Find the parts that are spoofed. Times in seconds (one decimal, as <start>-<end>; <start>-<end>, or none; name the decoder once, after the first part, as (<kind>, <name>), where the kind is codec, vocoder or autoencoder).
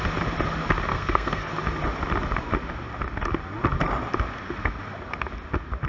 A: 0.9-1.5 (codec, SNAC)